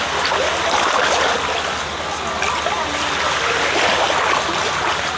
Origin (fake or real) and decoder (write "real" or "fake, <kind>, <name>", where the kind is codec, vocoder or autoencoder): real